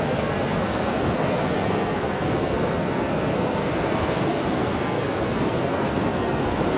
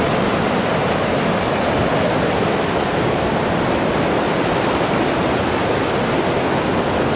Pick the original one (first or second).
second